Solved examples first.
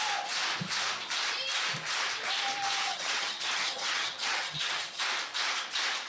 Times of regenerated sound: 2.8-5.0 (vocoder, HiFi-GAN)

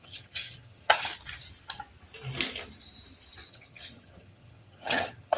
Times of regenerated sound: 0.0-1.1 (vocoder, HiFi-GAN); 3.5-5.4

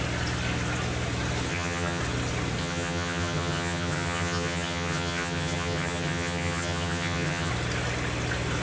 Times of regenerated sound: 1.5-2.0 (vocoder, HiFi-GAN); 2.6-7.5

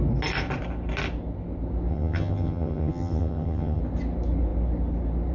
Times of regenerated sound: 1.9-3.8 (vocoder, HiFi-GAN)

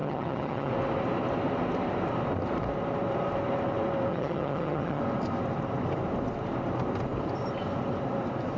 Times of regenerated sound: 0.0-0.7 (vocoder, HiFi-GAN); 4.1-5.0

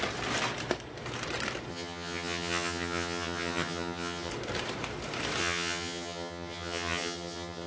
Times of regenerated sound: 1.7-4.3 (vocoder, HiFi-GAN); 5.4-7.7

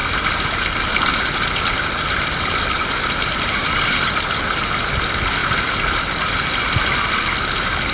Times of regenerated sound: none

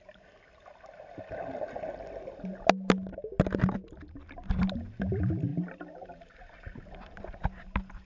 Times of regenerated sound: none